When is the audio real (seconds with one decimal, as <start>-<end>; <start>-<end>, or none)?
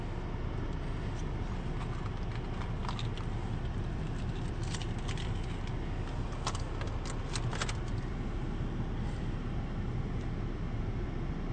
0.0-11.5